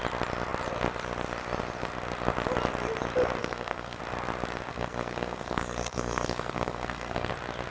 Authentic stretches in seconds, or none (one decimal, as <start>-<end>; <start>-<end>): 0.0-3.4; 4.0-4.7; 7.3-7.7